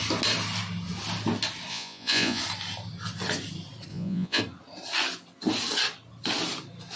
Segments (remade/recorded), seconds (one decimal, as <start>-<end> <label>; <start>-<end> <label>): 0.0-1.7 recorded; 1.7-2.4 remade; 2.4-3.9 recorded; 3.9-4.4 remade; 4.4-7.0 recorded